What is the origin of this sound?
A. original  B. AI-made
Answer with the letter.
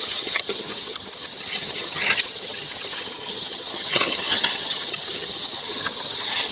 B